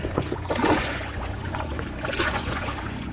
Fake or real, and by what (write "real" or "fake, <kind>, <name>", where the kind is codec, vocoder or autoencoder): fake, vocoder, Vocos